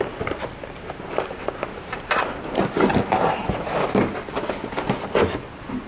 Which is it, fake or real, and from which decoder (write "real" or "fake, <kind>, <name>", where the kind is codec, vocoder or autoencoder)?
real